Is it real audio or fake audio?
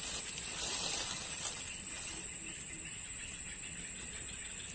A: real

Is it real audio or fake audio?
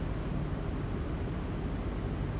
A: real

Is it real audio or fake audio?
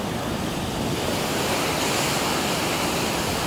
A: real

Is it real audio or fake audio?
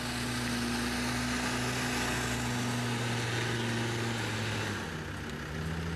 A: real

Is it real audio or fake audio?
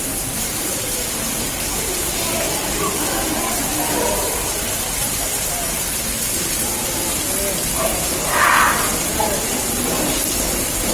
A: real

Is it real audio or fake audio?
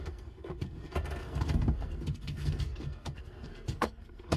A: fake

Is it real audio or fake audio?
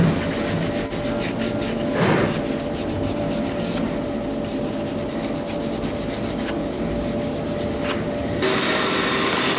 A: real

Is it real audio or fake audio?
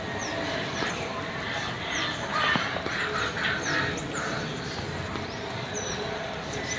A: real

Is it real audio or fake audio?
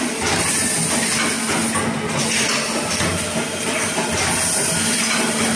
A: real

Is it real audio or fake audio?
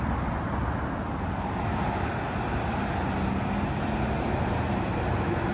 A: real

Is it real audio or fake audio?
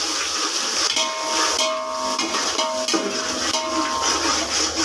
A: real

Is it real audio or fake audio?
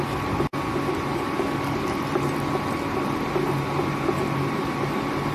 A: real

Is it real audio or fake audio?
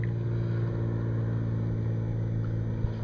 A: real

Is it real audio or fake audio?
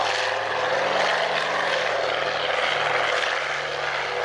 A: real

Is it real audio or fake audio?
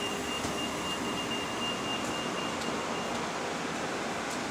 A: real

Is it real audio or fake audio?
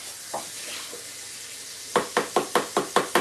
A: real